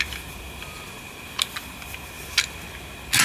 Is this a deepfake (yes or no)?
no